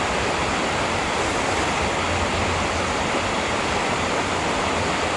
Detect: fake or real real